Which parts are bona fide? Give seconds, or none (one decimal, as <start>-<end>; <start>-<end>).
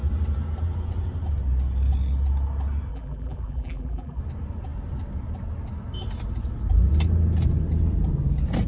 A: 0.0-2.9; 4.2-8.7